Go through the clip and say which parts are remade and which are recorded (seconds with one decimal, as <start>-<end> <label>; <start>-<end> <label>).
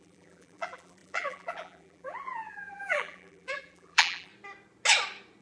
0.0-4.3 remade; 4.3-5.4 recorded